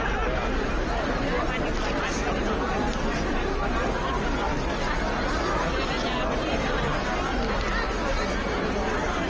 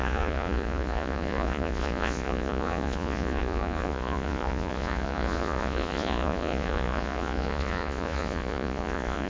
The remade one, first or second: second